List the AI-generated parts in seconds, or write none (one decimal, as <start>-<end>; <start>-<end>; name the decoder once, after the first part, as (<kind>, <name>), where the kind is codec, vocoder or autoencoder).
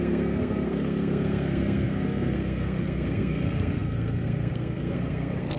0.0-5.6 (codec, SNAC)